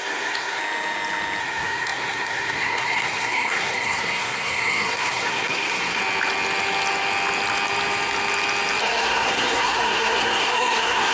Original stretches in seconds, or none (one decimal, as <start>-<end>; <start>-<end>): 0.6-1.4; 6.0-8.8